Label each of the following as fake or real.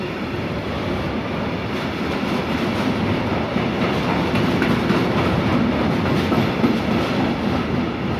real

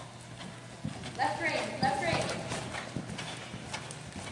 real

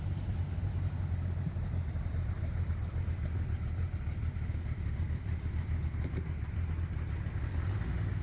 real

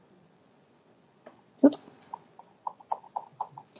fake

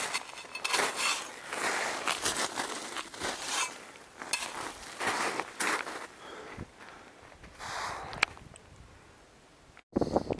real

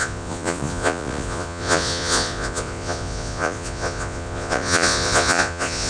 fake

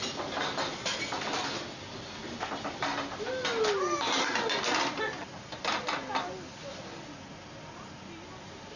real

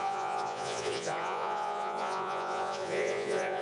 fake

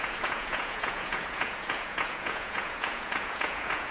fake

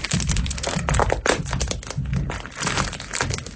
real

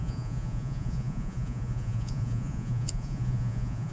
fake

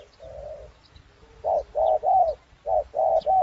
real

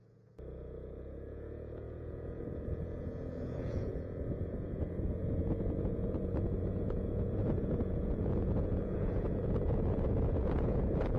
fake